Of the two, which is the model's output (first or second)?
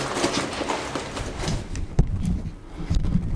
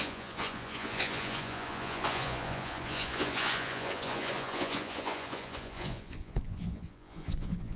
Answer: second